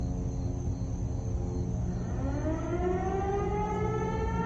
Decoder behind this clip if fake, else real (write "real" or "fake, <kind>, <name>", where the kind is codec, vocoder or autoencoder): real